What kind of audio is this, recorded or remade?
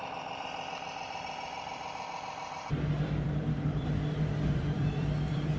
remade